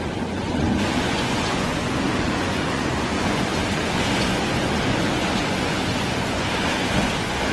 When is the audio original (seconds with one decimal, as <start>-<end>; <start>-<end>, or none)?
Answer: none